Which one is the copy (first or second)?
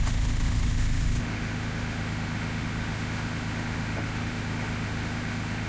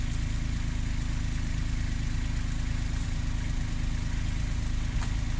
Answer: first